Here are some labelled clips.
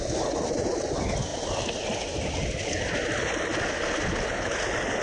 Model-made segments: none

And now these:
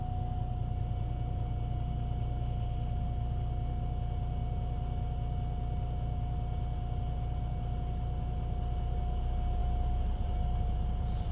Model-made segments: 9.6-11.3 (vocoder, BigVGAN v2)

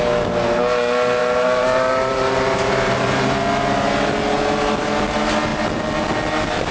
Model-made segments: 1.2-3.3 (vocoder, BigVGAN v2)

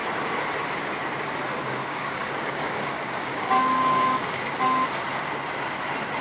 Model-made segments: 1.8-4.5 (codec, DAC)

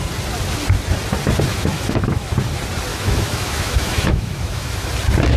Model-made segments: 1.5-2.3 (autoencoder, DAC-VAE); 2.9-4.9

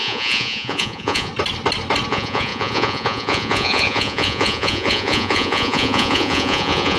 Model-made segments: 0.0-1.3 (vocoder, Vocos); 2.1-7.0

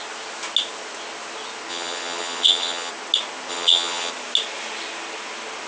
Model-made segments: 1.7-2.9 (vocoder, HiFi-GAN); 3.5-4.1

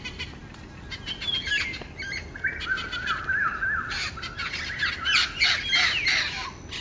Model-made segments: none